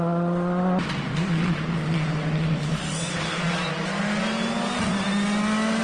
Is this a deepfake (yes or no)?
no